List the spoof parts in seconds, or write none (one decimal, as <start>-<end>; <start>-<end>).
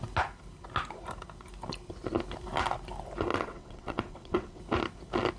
3.3-4.6